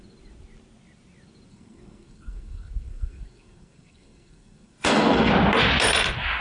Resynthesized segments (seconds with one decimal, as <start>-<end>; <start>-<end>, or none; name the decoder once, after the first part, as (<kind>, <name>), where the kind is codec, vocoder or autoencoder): 1.5-5.3 (codec, SNAC)